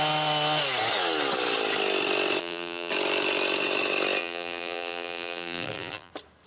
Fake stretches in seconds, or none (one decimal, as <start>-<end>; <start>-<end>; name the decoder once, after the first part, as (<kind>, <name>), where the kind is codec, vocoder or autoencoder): 2.4-2.9 (vocoder, BigVGAN v2); 4.2-6.1